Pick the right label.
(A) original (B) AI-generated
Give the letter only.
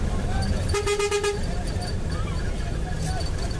A